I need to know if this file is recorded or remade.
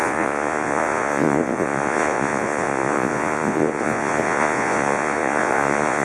remade